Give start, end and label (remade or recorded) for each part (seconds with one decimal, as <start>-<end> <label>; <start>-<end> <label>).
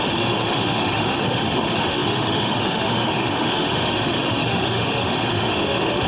0.0-6.1 remade